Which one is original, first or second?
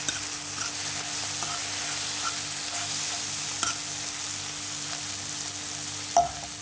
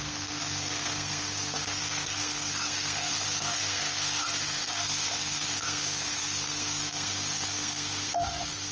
first